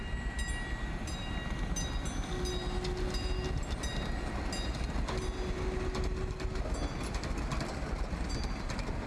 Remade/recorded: recorded